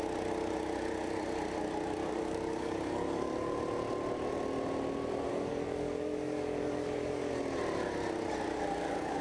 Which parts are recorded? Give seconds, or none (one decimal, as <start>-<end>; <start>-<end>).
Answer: 0.0-2.0; 3.6-5.3; 7.3-8.5